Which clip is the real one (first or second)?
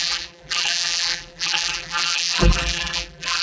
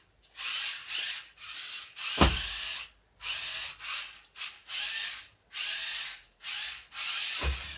second